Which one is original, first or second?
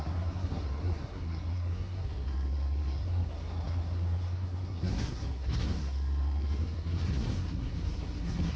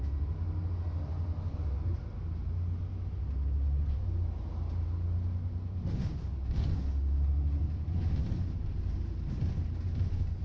second